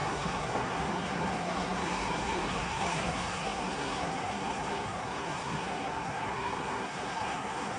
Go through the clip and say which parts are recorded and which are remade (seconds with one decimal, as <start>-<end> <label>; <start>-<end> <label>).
0.0-7.8 remade